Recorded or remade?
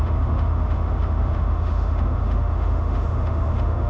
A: remade